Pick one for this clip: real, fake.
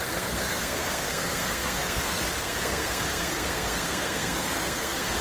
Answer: fake